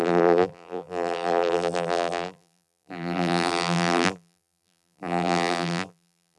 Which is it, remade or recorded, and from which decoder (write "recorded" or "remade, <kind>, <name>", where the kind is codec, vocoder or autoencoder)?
remade, vocoder, BigVGAN v2